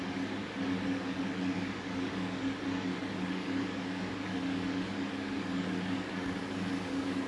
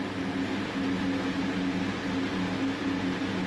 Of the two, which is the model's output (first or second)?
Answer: first